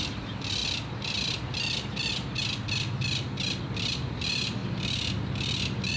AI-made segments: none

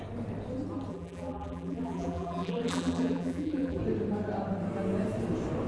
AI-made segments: 0.9-3.8

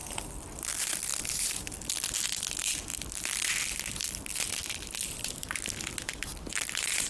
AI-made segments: 6.3-7.1